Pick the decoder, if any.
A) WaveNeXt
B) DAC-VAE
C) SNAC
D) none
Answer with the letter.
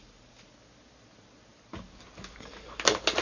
D